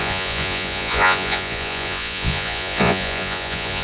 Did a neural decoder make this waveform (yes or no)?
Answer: yes